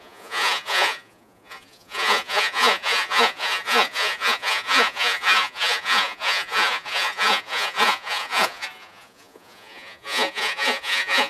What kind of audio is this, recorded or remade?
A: remade